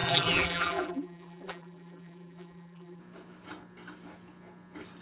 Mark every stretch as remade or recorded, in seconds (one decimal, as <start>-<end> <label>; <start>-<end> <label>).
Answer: 0.0-3.0 remade; 3.0-5.0 recorded